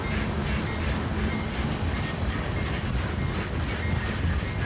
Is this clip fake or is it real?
real